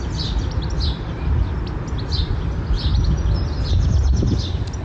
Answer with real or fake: real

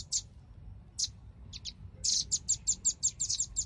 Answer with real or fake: real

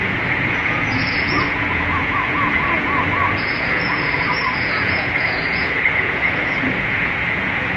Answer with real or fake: fake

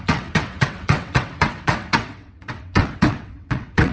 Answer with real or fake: fake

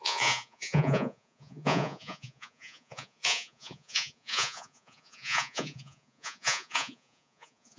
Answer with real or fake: fake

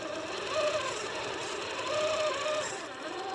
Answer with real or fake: fake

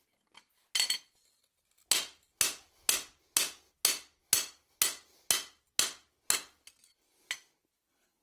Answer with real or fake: real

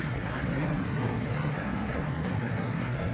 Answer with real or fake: fake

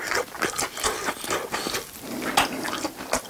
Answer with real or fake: real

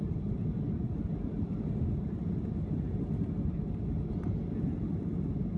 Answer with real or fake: real